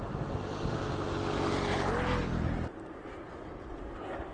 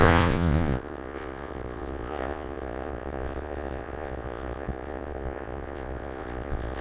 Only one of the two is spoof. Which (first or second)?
second